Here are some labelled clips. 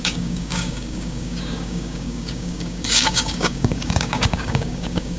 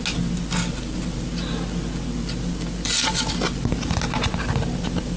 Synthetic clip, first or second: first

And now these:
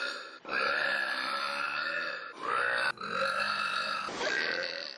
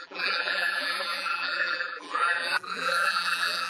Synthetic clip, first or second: second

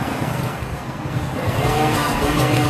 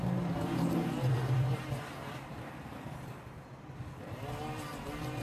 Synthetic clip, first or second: first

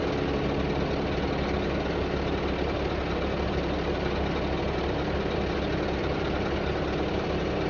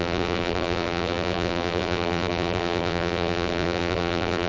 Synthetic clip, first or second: second